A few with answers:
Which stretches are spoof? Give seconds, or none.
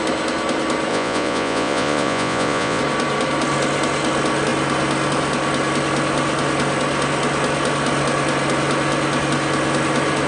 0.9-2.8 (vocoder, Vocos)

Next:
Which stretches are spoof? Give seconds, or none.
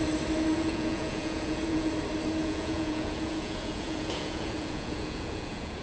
0.5-1.9 (vocoder, Vocos); 2.4-5.8